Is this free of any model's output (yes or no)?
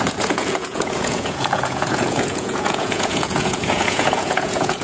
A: no